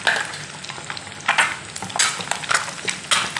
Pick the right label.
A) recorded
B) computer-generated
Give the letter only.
A